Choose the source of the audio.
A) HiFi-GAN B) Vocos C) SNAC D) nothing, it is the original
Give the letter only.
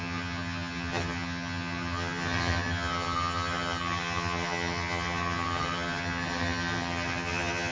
A